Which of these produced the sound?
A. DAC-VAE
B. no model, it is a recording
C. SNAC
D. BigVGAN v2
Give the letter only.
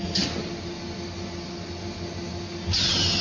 B